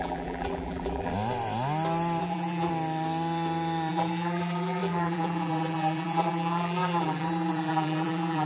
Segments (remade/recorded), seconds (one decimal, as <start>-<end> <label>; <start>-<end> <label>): 0.0-1.1 remade; 1.1-2.2 recorded; 2.2-2.7 remade; 2.7-3.9 recorded; 3.9-8.5 remade